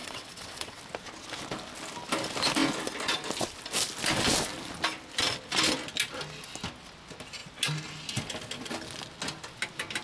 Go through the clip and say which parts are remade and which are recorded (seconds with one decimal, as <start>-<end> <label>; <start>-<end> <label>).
0.0-0.8 remade; 0.8-10.0 recorded